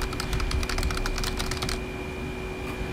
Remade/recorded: recorded